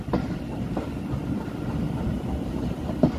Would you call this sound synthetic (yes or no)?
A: no